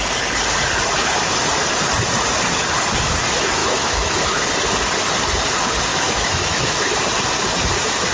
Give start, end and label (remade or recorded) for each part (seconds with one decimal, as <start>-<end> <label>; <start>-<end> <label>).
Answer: 0.0-3.6 recorded; 3.6-4.5 remade; 4.5-5.9 recorded; 5.9-6.9 remade; 6.9-8.1 recorded